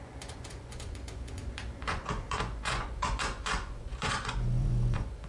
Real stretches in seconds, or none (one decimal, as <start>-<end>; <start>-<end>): none